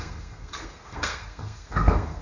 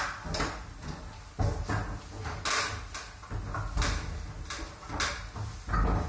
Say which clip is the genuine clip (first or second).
second